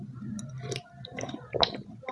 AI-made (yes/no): no